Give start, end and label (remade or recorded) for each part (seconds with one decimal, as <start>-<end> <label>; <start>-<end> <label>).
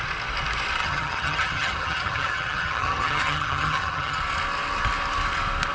0.0-0.8 recorded; 0.8-4.2 remade; 4.2-5.7 recorded